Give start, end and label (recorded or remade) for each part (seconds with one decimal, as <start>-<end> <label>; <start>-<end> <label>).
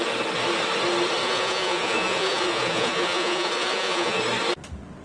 0.0-1.2 recorded; 1.2-4.2 remade; 4.2-5.0 recorded